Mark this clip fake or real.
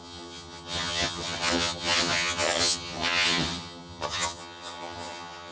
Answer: fake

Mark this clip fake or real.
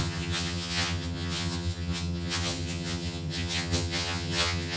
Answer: fake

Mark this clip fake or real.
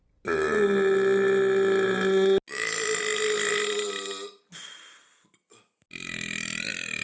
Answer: real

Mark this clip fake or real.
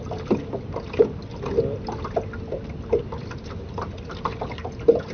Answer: real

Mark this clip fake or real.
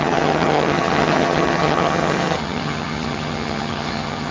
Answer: fake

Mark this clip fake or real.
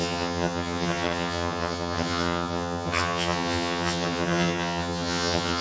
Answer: fake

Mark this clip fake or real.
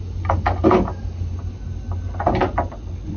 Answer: real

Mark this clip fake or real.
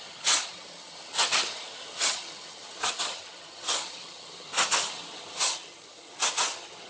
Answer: fake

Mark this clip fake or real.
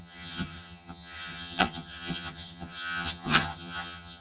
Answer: fake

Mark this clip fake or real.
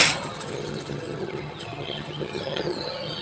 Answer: fake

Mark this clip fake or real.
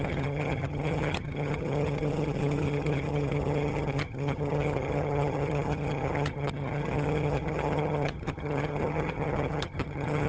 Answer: fake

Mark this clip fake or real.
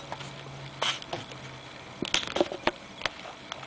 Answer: real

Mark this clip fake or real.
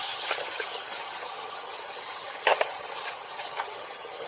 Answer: fake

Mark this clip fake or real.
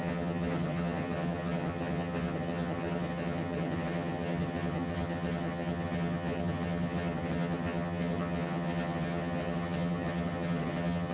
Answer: fake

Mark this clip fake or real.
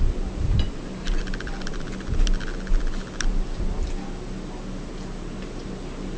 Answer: real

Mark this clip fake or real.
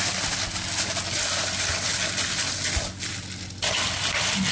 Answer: real